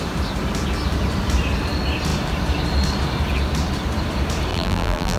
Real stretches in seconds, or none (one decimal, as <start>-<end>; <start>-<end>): 0.0-4.5